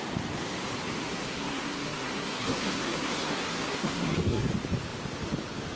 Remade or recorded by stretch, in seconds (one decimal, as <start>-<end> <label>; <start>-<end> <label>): 0.0-1.0 recorded; 1.0-4.5 remade; 4.5-5.8 recorded